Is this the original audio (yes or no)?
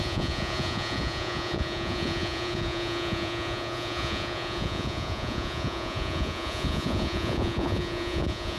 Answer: no